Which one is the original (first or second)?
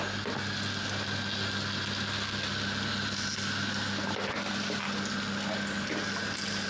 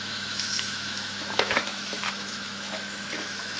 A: first